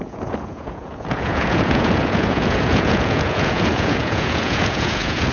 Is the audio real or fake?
fake